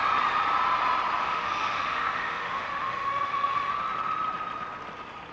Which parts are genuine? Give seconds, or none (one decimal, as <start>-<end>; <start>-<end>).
0.0-1.2; 3.7-5.3